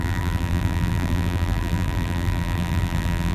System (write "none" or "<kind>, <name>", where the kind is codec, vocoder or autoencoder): vocoder, BigVGAN v2